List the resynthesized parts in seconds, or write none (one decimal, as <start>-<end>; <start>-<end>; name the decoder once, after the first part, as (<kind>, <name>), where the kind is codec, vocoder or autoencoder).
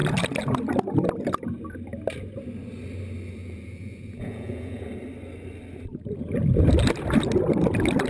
3.4-4.9 (vocoder, Vocos)